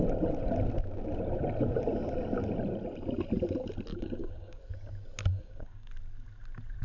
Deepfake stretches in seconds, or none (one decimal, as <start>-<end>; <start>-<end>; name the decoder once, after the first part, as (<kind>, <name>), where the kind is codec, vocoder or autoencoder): 3.9-4.6 (codec, DAC); 5.3-5.9